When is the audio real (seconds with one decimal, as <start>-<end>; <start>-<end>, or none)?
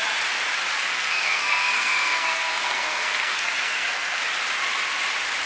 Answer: 0.0-0.9; 4.2-5.5